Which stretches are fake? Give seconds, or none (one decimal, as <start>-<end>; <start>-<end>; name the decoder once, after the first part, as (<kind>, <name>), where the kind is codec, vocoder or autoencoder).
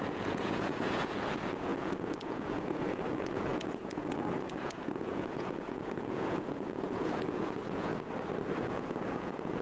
0.0-7.9 (vocoder, Vocos); 8.6-9.6